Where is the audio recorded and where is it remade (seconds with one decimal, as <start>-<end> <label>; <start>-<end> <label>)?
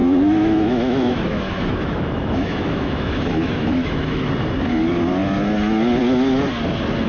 0.0-4.3 remade; 4.3-7.1 recorded